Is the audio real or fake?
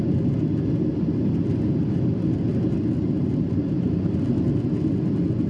real